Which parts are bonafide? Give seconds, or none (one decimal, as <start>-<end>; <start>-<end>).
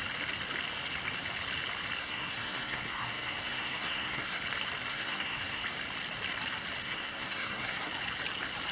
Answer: 0.0-2.0; 4.4-4.9; 5.6-6.8; 7.9-8.7